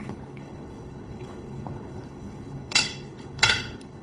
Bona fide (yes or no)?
no